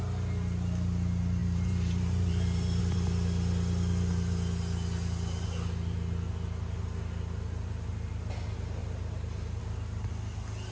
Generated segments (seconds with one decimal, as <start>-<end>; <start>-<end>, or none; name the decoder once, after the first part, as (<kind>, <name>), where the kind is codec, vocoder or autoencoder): 1.4-2.8 (vocoder, BigVGAN v2); 8.8-9.6